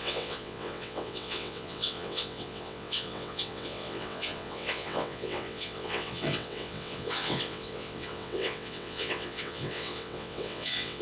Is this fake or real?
fake